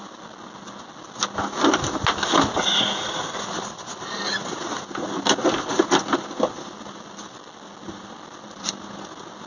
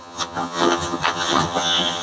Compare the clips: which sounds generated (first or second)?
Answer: second